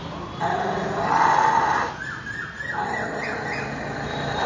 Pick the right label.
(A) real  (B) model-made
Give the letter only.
A